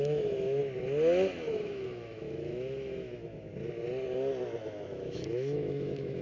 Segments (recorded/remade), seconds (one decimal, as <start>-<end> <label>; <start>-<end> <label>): 0.0-0.6 remade; 0.6-1.5 recorded; 1.5-3.5 remade; 3.5-4.6 recorded; 4.6-6.2 remade